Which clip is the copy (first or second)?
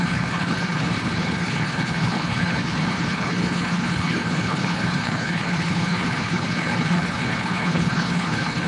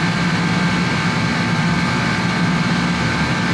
first